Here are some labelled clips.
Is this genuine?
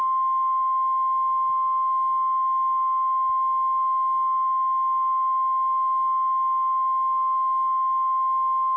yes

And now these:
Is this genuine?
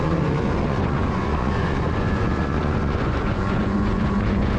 no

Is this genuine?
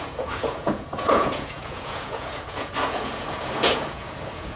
no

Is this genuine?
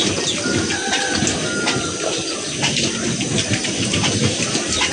yes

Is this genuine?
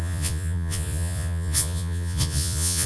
no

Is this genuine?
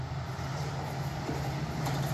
yes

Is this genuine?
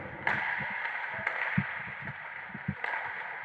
yes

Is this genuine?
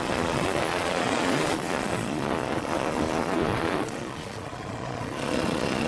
no